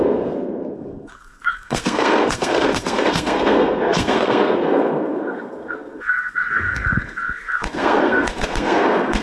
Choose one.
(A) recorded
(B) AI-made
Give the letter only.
B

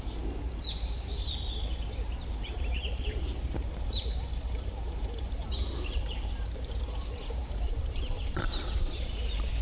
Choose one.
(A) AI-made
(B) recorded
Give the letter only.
A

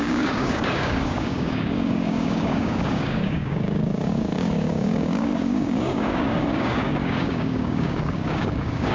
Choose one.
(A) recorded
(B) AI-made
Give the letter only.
B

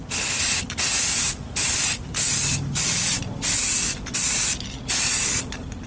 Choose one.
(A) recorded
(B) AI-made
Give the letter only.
A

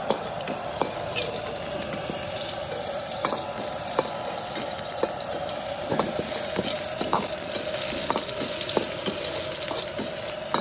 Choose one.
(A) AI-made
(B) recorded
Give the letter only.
B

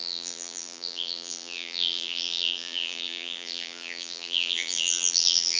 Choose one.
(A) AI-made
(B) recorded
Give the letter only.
A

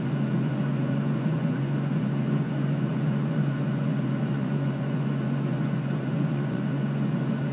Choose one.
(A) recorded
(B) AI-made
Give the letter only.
B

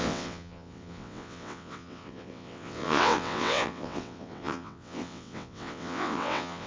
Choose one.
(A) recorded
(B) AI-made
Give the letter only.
B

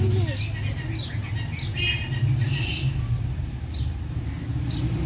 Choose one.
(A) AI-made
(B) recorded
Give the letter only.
B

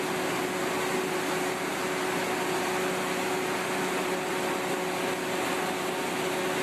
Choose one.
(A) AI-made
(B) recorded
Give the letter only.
B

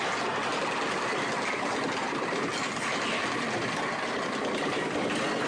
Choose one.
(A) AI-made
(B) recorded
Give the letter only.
B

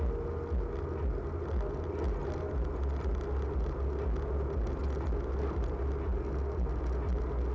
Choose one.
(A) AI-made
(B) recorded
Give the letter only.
B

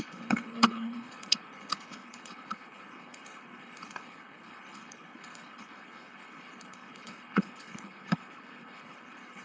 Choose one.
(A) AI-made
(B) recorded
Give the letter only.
A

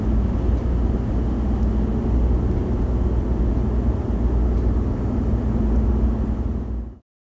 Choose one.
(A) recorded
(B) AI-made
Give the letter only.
A